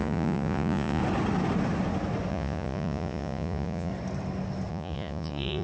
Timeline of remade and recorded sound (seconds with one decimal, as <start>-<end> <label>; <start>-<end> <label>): 0.0-1.0 remade; 1.0-2.3 recorded; 2.3-3.9 remade; 3.9-4.7 recorded; 4.7-5.6 remade